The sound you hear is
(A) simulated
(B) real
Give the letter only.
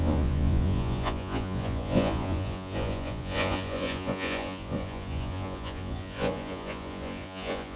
A